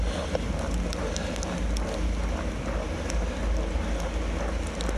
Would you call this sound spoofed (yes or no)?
no